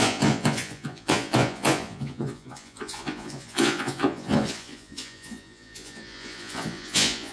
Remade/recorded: remade